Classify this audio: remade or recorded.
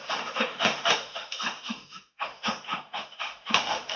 remade